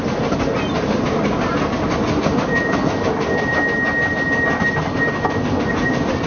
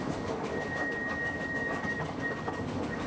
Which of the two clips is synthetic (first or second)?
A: second